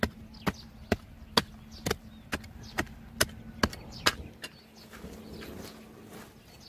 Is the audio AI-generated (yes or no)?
no